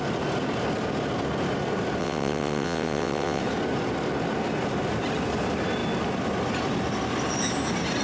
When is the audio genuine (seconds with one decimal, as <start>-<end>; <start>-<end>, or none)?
0.0-2.0; 3.4-8.0

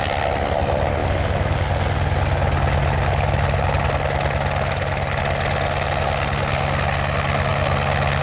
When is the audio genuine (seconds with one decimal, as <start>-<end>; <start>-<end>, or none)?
0.0-8.2

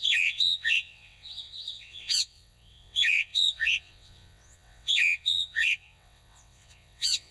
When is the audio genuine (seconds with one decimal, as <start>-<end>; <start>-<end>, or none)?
none